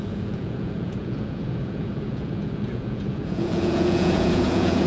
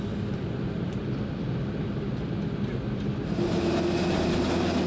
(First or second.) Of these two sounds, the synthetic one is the first